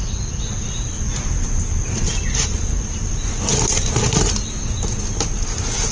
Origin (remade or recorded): recorded